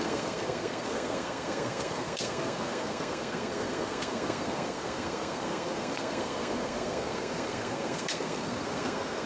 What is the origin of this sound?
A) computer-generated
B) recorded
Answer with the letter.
A